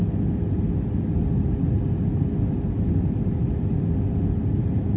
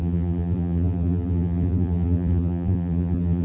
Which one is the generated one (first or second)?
second